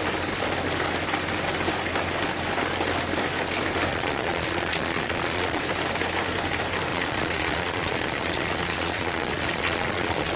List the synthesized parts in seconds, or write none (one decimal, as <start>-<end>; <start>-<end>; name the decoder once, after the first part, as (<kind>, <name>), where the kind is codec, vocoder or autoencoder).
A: 3.9-5.6 (vocoder, Vocos); 6.9-10.4